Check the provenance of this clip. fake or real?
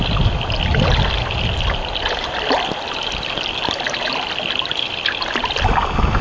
real